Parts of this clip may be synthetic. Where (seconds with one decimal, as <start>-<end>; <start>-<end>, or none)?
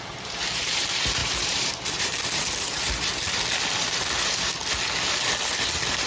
0.0-3.1; 3.8-4.6